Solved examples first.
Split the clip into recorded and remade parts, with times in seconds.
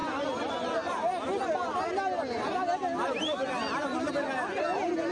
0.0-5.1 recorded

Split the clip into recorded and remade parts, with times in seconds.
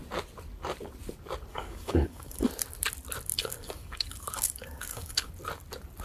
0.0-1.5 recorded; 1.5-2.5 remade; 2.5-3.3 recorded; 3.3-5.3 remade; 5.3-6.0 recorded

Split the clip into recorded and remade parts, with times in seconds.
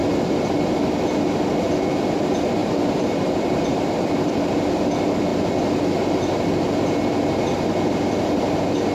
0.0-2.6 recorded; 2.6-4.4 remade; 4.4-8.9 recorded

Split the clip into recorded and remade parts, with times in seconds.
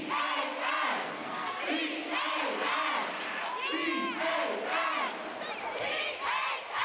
0.0-1.0 recorded; 1.0-1.6 remade; 1.6-6.8 recorded